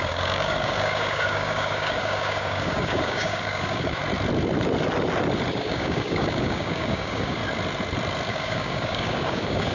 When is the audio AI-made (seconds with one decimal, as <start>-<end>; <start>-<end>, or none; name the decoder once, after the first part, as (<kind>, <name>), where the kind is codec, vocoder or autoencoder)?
0.0-4.0 (codec, DAC); 5.5-7.4; 8.3-9.7